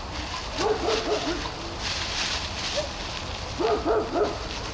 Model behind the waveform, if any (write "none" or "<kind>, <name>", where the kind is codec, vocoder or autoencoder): none